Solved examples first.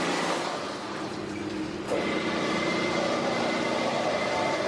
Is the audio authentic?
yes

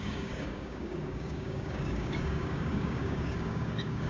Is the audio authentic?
no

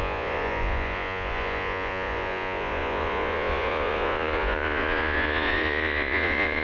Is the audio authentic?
no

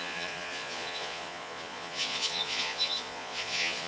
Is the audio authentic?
no